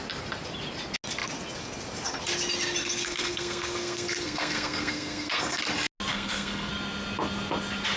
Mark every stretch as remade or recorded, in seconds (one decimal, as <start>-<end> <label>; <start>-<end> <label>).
0.0-2.8 recorded; 2.8-5.6 remade; 5.6-6.1 recorded; 6.1-6.7 remade; 6.7-8.0 recorded